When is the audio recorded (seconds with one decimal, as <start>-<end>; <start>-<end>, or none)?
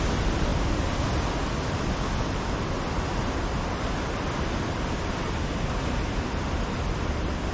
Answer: 0.0-7.5